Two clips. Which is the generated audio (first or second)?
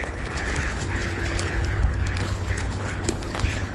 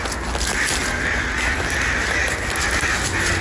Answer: first